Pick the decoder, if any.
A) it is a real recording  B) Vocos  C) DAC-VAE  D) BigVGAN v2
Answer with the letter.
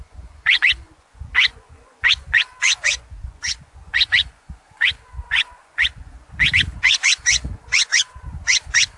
B